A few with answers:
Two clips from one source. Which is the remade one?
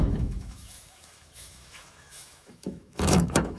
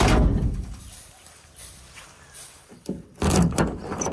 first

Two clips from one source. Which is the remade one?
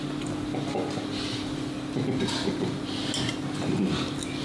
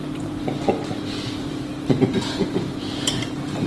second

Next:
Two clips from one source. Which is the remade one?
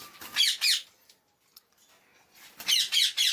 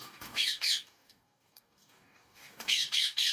second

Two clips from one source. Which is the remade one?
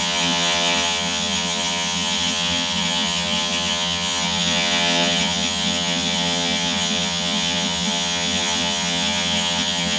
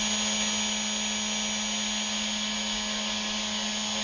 first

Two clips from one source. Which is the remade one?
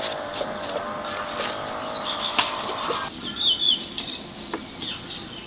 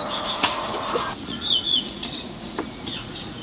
second